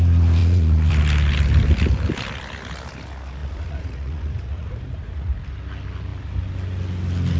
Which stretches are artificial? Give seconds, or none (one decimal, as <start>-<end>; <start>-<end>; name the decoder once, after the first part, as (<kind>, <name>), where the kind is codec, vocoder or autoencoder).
0.4-0.9 (vocoder, Vocos); 3.4-5.3